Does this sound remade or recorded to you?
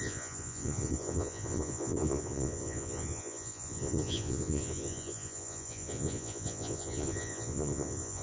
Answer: remade